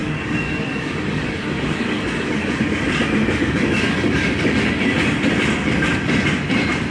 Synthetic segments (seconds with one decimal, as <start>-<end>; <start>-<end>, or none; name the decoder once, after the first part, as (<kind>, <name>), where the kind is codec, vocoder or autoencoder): 0.0-2.8 (codec, DAC); 3.4-4.7